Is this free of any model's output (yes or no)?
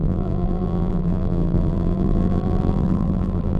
no